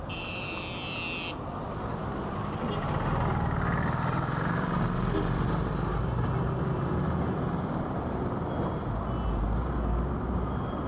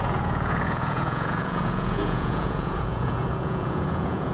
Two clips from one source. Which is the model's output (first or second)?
second